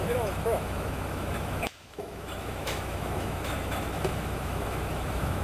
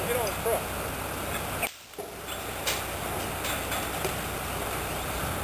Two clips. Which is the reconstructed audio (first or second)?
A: first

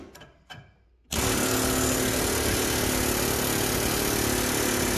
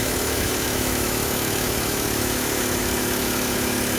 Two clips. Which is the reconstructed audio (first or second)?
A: second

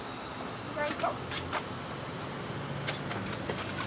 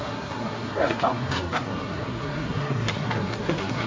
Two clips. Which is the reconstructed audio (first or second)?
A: second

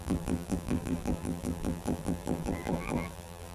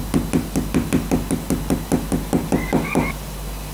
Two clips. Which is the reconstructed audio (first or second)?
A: first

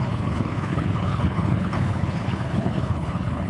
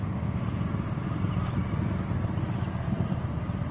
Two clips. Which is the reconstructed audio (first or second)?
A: first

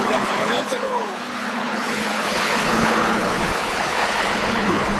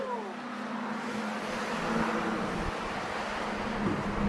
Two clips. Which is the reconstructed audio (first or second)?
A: first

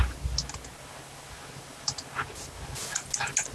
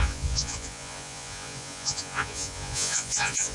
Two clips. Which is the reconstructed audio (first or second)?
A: second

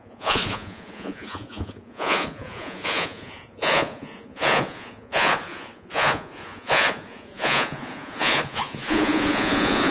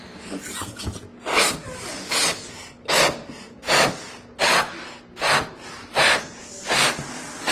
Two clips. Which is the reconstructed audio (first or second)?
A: first